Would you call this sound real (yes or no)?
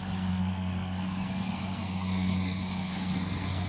no